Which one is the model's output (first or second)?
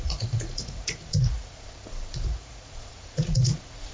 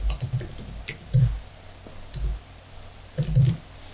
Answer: first